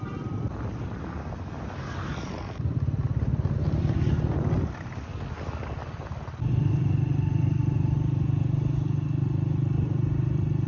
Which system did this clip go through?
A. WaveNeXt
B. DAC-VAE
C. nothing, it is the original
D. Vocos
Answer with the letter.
C